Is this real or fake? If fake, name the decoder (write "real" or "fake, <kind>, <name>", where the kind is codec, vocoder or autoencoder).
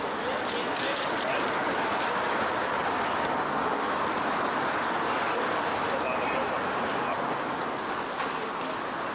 real